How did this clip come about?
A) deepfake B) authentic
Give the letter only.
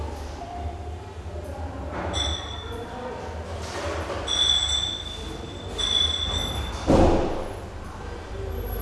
B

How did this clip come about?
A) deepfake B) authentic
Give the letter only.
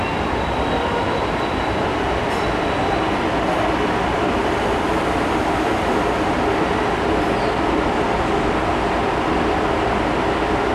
A